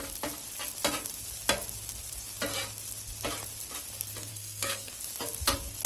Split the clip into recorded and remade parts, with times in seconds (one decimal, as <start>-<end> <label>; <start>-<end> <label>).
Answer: 0.0-4.3 recorded; 4.3-4.9 remade; 4.9-5.9 recorded